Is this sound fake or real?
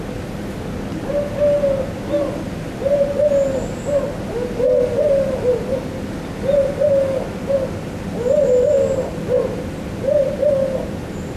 real